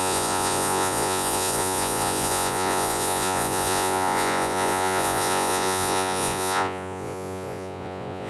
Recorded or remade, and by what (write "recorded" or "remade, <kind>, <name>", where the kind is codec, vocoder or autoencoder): remade, vocoder, Vocos